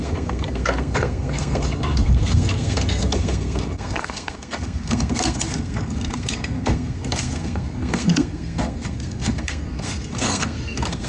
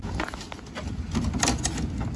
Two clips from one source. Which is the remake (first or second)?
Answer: first